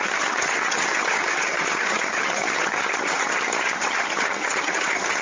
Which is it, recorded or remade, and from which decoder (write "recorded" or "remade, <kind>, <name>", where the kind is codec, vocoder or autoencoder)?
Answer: remade, vocoder, HiFi-GAN